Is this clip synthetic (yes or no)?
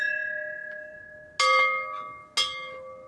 no